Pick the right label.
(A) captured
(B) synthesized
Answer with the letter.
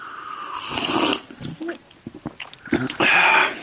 A